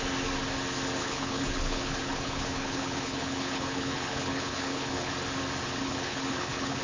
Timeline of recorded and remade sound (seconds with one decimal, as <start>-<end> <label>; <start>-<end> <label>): 0.0-1.0 recorded; 1.0-5.1 remade; 5.1-5.8 recorded; 5.8-6.8 remade